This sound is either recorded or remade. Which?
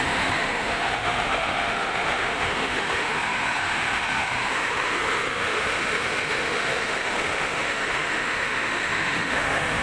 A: remade